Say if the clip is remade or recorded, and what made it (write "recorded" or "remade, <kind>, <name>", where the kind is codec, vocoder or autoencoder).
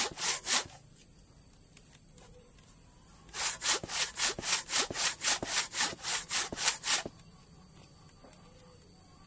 recorded